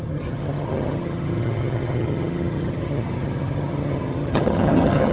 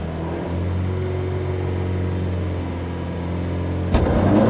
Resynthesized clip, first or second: first